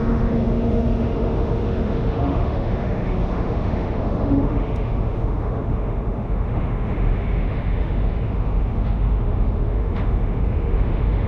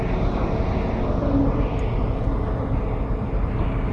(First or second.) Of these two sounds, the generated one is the first